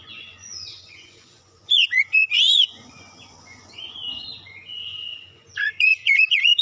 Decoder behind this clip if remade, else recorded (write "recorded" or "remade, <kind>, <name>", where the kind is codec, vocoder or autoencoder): remade, vocoder, Vocos